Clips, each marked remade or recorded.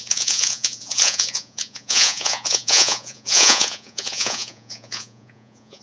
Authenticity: remade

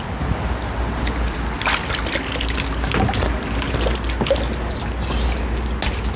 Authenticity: recorded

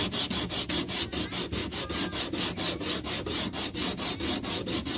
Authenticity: recorded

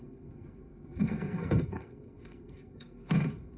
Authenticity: remade